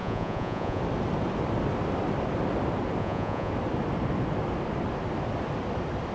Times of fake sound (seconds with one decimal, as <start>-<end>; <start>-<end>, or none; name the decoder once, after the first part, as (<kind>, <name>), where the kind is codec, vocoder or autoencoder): 0.0-0.8 (vocoder, Vocos); 3.0-3.5